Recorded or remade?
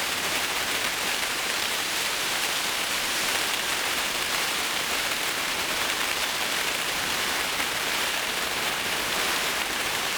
remade